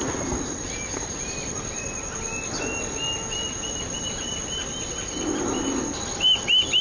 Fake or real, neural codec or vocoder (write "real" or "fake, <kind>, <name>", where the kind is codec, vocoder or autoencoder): real